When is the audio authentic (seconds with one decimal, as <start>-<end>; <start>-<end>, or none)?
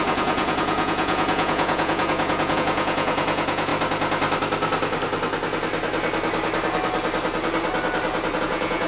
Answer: 3.7-8.4